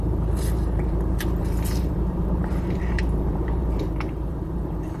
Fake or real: fake